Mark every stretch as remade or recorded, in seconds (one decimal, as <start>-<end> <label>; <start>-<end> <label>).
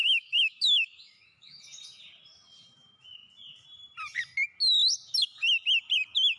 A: 0.0-1.6 remade; 1.6-6.4 recorded